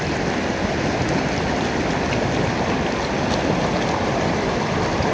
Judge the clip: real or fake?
real